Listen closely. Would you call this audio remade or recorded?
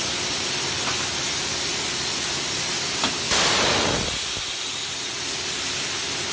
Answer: recorded